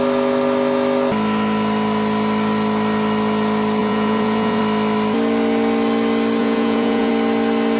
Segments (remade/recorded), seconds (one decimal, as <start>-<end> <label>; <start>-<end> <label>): 0.0-3.8 recorded; 3.8-4.6 remade; 4.6-6.4 recorded; 6.4-7.1 remade; 7.1-7.8 recorded